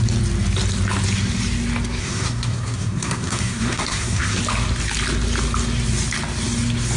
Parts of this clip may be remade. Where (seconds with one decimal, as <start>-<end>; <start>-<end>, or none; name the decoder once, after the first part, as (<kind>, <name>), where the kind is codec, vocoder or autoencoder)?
2.0-4.4 (codec, SNAC)